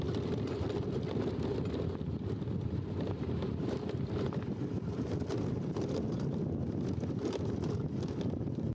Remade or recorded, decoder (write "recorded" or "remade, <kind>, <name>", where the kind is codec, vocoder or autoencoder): recorded